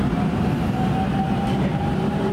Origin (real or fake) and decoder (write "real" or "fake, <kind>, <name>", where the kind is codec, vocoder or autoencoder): fake, vocoder, BigVGAN v2